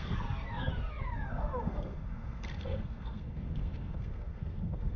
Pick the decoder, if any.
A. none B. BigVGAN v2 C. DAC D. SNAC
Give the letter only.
D